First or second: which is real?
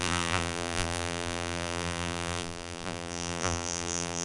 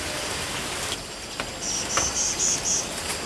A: second